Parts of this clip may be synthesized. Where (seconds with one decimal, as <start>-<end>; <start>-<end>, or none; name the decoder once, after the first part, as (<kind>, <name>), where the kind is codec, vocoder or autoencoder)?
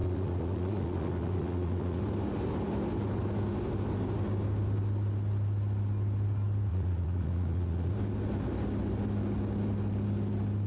0.0-2.0 (vocoder, Vocos); 6.7-7.9